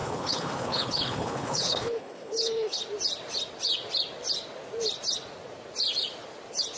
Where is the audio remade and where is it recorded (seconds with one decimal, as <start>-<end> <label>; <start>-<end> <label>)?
0.0-2.8 remade; 2.8-6.8 recorded